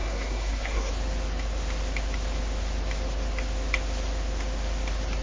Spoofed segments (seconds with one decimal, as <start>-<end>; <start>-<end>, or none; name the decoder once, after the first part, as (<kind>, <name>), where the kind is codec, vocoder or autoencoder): 0.0-0.9 (codec, SNAC)